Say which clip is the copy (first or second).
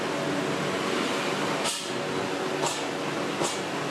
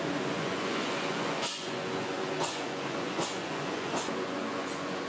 second